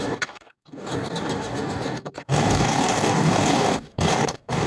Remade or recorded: remade